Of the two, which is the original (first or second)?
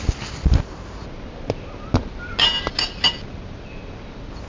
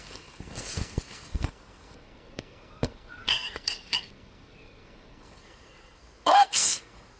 first